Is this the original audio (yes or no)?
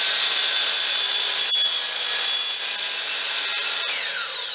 yes